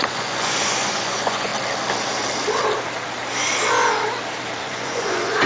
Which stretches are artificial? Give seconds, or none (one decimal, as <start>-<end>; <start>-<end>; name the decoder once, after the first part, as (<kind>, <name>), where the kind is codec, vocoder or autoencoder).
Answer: 0.0-1.5 (vocoder, Vocos); 4.6-5.5